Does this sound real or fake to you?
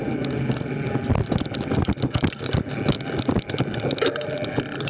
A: real